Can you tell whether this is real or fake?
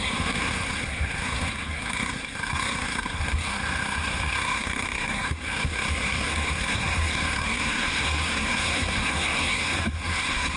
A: fake